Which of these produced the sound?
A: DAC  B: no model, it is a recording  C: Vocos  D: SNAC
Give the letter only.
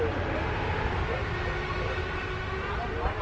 B